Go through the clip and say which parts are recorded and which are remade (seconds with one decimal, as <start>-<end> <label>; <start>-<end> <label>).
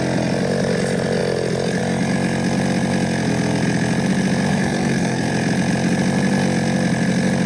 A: 0.0-4.5 recorded; 4.5-5.3 remade; 5.3-7.5 recorded